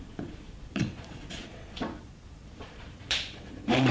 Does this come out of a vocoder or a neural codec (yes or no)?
yes